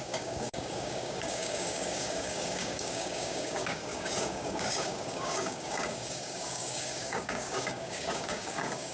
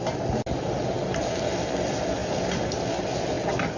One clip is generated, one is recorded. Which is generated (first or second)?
first